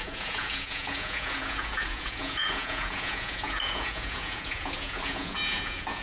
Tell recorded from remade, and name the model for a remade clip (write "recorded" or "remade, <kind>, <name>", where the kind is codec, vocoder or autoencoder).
remade, vocoder, Vocos